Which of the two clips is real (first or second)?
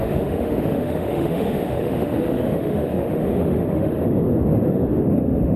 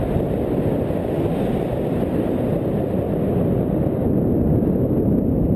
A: second